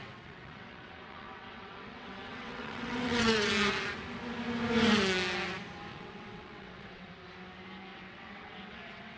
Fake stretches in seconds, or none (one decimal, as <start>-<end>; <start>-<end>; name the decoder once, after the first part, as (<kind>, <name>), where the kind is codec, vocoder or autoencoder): 0.0-3.5 (vocoder, WaveNeXt); 5.9-7.1; 7.9-9.2